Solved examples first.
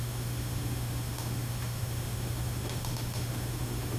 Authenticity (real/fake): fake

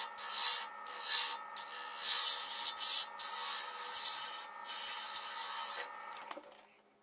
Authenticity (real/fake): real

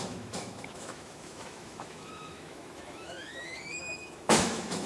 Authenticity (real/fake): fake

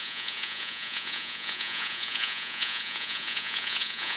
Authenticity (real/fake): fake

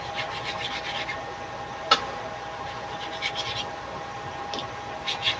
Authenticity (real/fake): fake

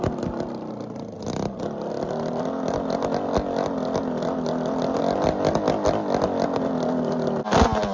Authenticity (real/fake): real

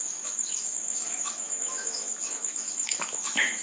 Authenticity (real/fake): fake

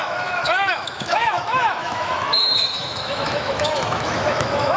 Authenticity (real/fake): fake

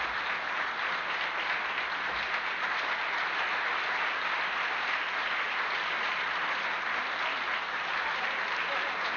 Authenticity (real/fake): real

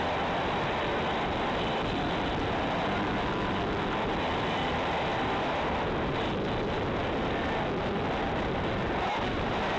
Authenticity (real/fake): real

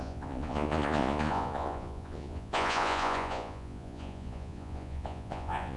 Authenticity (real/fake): fake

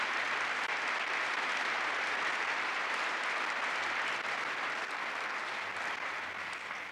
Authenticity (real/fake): real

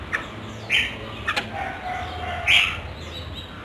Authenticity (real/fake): real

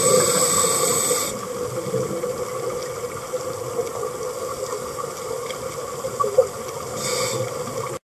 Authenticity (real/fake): real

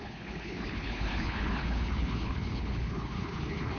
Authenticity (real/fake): fake